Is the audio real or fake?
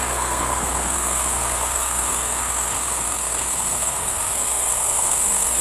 fake